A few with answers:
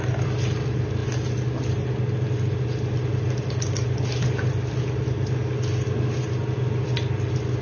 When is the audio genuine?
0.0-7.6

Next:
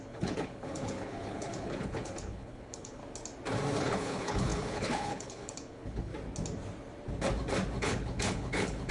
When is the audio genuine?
3.0-3.8; 6.1-7.8

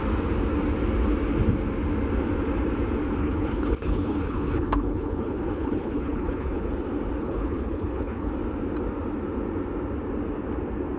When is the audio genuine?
0.0-3.2; 6.7-7.2; 8.3-11.0

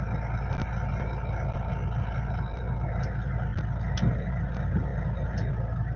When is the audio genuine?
0.0-6.0

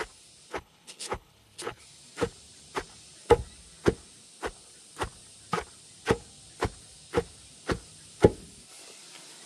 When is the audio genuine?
0.0-0.5; 1.8-9.5

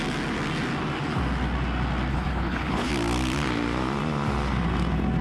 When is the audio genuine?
0.0-2.1; 2.9-5.2

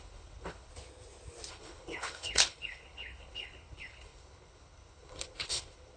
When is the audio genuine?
0.7-1.5

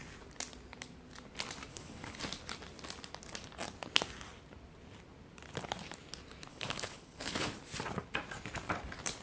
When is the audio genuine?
0.0-1.7; 2.2-6.5; 7.5-9.2